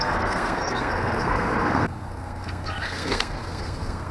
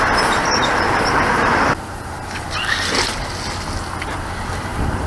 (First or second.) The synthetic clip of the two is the first